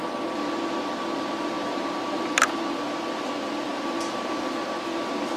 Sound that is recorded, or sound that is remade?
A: recorded